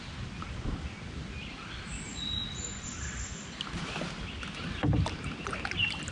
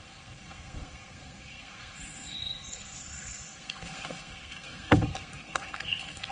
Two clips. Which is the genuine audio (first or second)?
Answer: first